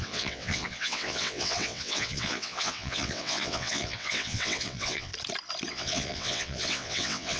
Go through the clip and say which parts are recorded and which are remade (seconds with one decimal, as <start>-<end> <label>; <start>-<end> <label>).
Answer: 0.0-5.1 remade; 5.1-5.7 recorded; 5.7-7.4 remade